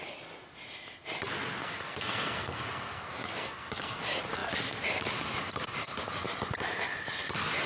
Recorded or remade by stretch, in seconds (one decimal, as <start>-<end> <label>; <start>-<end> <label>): 0.0-1.6 recorded; 1.6-4.0 remade; 4.0-7.7 recorded